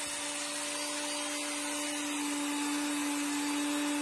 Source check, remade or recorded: recorded